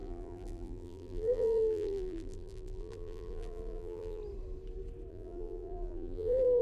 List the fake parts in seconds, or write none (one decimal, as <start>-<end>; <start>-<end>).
0.0-4.2; 5.1-6.6